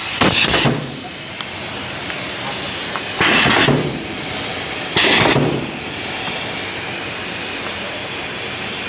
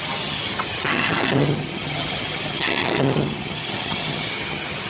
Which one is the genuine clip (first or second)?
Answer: first